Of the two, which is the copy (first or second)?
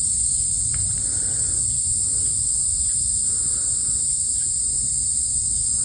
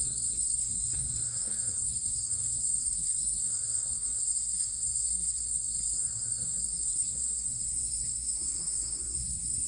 second